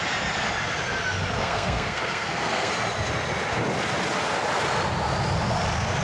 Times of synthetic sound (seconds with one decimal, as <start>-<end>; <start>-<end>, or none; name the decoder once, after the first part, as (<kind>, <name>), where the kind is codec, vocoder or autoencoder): 1.4-2.7 (codec, SNAC)